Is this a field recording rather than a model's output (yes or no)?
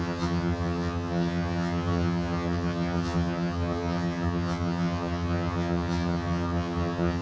no